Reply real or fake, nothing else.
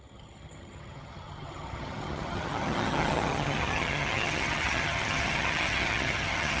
fake